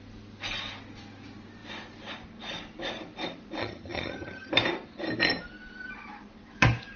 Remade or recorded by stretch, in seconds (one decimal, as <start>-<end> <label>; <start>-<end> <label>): 0.0-3.6 recorded; 3.6-4.5 remade; 4.5-7.0 recorded